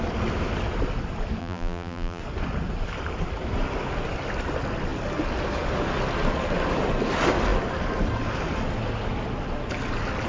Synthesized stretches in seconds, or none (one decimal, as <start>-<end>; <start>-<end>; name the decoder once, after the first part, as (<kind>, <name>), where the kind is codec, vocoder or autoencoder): 1.4-2.2 (vocoder, BigVGAN v2)